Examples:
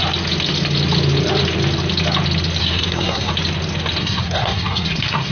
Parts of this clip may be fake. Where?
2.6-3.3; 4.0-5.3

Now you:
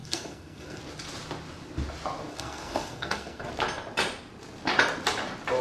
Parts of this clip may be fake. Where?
0.0-0.8; 2.3-3.5